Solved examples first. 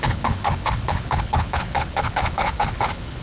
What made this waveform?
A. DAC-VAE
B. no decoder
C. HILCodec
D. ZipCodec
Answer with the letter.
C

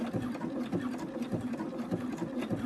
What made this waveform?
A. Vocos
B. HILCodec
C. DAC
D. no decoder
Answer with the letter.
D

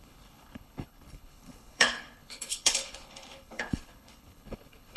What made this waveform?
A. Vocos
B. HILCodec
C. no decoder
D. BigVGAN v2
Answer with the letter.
B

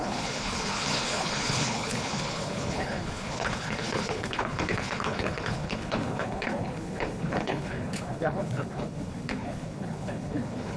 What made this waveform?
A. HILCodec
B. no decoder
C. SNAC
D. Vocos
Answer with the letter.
A